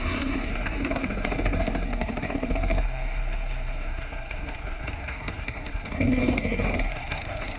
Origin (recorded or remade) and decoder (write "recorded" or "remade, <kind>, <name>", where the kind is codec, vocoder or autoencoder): remade, codec, SNAC